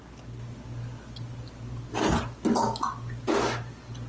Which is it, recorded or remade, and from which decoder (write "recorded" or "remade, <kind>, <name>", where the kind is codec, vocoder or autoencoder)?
recorded